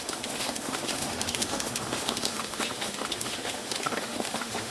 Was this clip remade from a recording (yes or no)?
yes